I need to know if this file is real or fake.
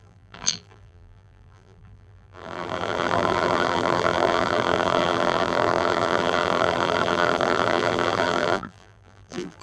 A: fake